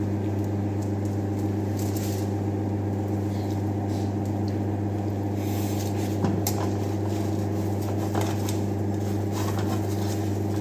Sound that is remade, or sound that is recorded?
recorded